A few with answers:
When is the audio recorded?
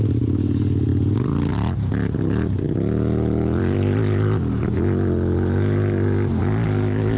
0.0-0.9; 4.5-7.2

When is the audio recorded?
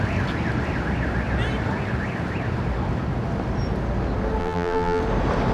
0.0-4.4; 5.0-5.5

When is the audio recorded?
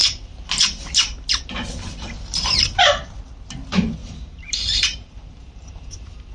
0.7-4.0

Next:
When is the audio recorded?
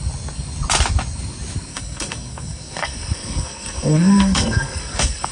0.0-1.7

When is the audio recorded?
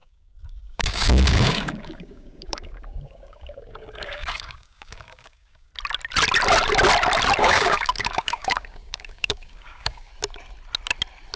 5.7-7.4; 10.1-11.4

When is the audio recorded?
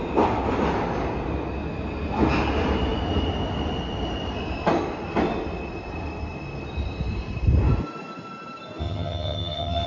0.0-8.8